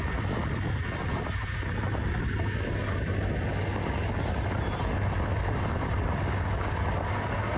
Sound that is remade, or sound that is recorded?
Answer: recorded